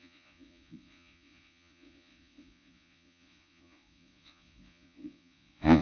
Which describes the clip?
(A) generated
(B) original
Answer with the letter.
A